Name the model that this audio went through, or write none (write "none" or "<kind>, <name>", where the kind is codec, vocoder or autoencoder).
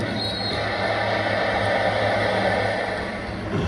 none